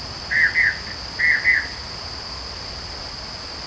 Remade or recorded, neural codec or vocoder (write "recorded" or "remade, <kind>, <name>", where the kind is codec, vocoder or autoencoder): recorded